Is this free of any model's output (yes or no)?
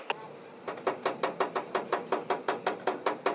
yes